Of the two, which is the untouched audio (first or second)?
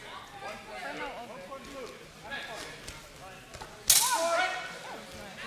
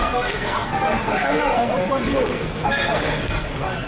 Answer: first